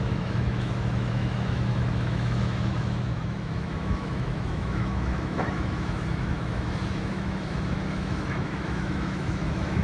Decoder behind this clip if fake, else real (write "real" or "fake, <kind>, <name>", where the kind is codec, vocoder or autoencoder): fake, autoencoder, DAC-VAE